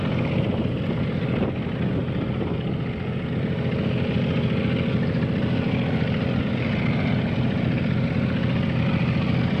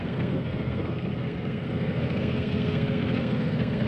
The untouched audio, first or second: first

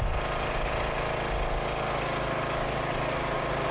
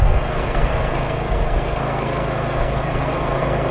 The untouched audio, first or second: first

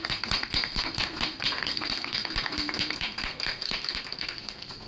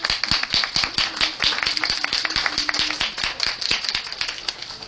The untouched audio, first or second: second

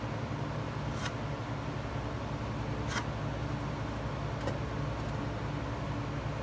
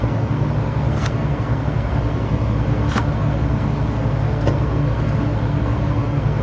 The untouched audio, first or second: first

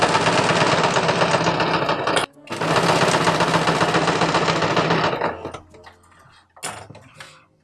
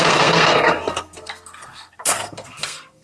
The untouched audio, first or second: first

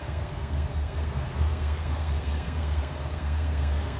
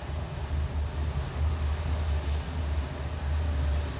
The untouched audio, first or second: second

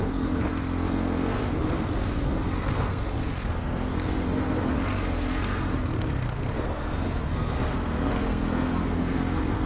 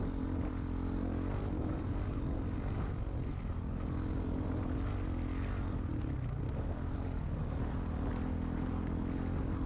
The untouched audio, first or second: second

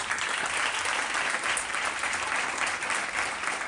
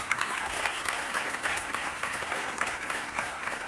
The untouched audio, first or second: first